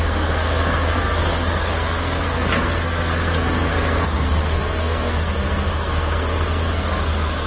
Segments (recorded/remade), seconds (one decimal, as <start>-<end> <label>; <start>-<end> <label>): 0.0-7.5 remade